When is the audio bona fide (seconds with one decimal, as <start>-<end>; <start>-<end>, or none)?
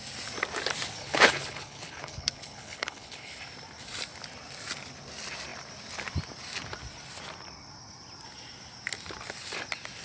0.0-1.0; 3.4-10.0